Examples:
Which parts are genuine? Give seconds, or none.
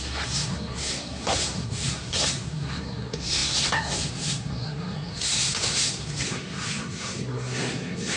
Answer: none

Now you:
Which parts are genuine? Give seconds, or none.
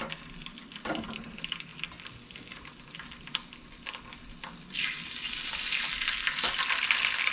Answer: 0.0-7.3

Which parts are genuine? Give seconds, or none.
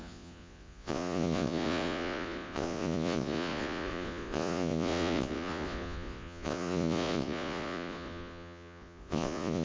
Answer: none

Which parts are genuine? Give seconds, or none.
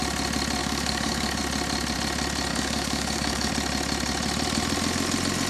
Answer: 0.0-0.6; 1.4-2.5; 3.5-5.5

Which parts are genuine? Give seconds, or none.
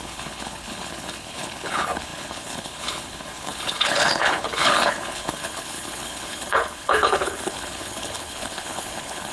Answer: none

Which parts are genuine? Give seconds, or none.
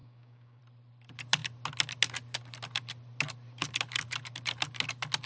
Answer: 0.6-5.3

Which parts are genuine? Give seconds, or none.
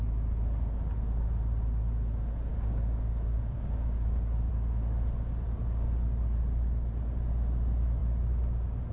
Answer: 0.0-2.5; 4.5-8.9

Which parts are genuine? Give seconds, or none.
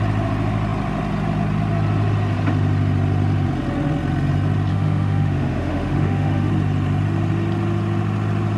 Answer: 0.0-4.7; 6.5-8.6